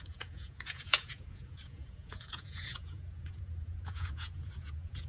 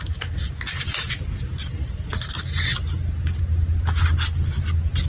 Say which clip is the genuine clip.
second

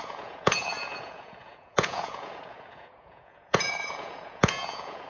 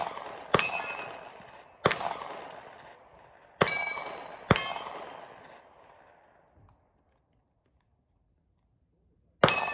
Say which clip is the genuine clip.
second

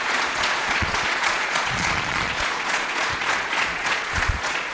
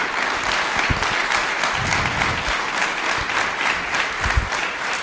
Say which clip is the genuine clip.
second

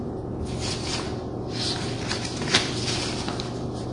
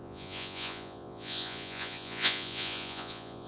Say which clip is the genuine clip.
first